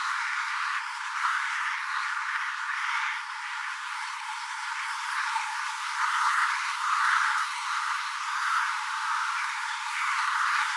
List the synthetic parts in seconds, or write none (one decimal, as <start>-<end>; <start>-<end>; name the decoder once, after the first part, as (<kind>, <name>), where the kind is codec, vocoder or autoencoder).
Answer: 0.0-8.7 (codec, SNAC); 9.4-10.8